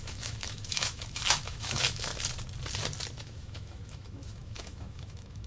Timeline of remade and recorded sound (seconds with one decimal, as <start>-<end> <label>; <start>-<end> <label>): 0.0-2.1 remade; 2.1-3.2 recorded; 3.2-5.5 remade

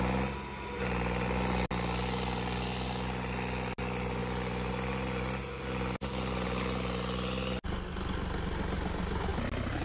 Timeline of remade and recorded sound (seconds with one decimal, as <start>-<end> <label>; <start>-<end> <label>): 0.0-9.8 recorded

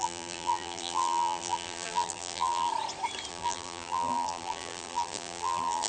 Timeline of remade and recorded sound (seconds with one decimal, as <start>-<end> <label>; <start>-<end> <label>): 0.0-2.7 remade; 2.7-3.3 recorded; 3.3-5.9 remade

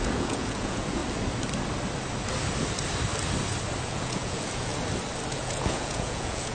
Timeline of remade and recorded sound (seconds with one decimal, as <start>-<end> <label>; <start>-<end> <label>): 0.0-1.0 remade; 1.0-3.8 recorded; 3.8-4.7 remade; 4.7-5.3 recorded; 5.3-6.5 remade